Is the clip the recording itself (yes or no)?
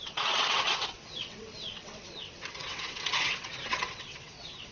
no